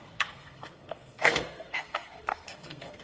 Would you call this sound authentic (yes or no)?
no